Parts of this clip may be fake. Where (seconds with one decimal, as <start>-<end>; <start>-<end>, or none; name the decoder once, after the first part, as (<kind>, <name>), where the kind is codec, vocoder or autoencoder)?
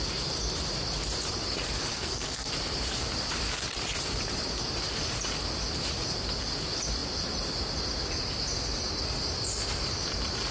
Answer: 1.9-2.5 (codec, SNAC)